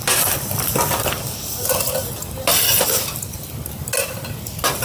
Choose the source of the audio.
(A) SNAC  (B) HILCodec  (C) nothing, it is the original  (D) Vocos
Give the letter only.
C